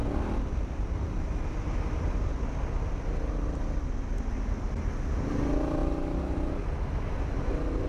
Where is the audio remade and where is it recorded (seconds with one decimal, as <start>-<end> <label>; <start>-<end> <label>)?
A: 0.0-7.9 recorded